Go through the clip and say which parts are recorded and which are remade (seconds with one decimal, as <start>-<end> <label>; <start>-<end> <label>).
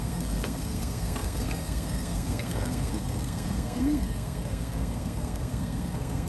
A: 0.0-6.3 remade